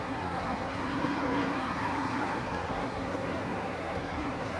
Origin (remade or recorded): remade